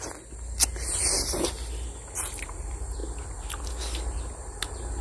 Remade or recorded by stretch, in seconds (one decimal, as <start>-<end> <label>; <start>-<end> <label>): 0.0-5.0 recorded